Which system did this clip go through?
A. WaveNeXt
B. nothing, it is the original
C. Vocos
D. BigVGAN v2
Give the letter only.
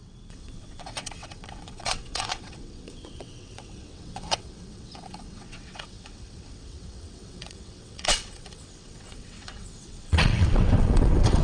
A